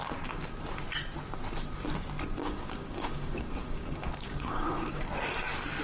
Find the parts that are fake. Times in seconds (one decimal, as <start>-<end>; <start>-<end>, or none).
2.4-5.0